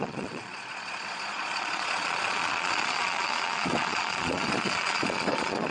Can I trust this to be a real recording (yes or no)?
no